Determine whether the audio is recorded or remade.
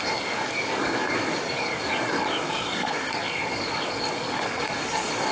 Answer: remade